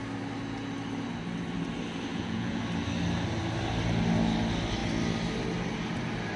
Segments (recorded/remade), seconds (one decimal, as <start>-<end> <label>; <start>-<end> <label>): 0.0-2.1 recorded; 2.1-2.6 remade; 2.6-6.4 recorded